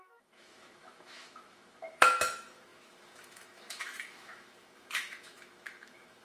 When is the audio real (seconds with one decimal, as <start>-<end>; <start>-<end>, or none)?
none